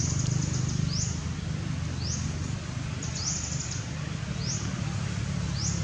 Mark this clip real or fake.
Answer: real